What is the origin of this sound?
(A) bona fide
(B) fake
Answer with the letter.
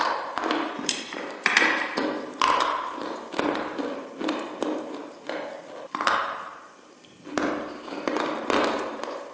B